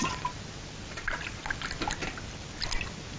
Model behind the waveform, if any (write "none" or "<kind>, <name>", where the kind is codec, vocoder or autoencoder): none